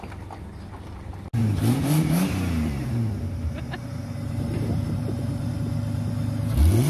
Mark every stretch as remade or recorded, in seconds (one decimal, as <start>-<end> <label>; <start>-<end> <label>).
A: 0.0-1.4 recorded; 1.4-5.5 remade; 5.5-6.9 recorded